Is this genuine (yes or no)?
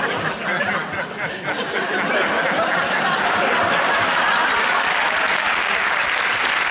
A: yes